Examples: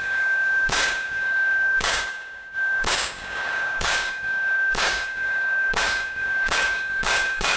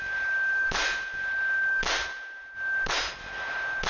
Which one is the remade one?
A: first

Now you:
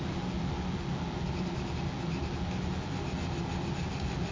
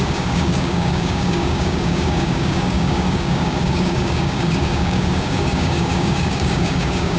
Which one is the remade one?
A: second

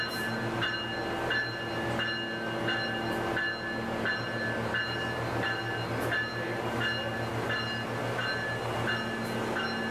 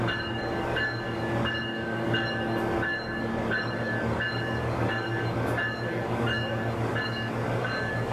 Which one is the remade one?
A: second